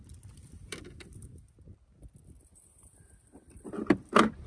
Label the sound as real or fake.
real